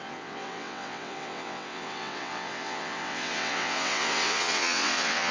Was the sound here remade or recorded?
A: remade